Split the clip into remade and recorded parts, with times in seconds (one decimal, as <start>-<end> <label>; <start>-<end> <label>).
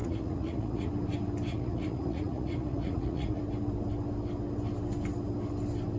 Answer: 0.0-0.9 remade; 0.9-1.5 recorded; 1.5-3.4 remade; 3.4-6.0 recorded